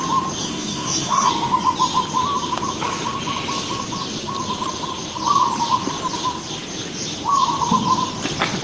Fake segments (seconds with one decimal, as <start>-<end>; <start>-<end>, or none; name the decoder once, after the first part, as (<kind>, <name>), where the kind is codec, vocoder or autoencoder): 0.4-1.3 (codec, SNAC)